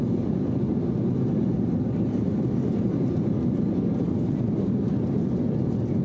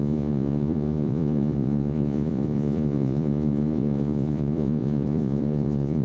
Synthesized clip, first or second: second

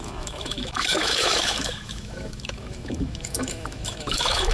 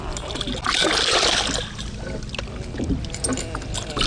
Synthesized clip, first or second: first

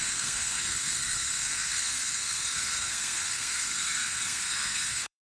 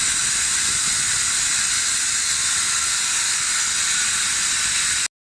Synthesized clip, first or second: first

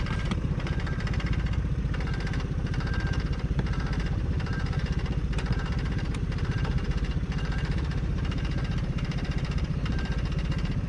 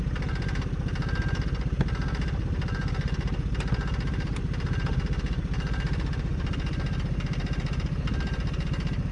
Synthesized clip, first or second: first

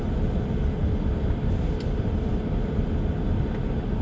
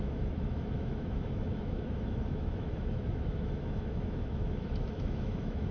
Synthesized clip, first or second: second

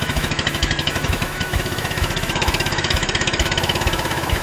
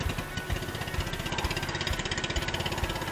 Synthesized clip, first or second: first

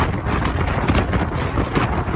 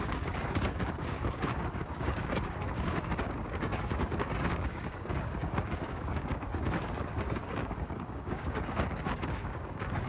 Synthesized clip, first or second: second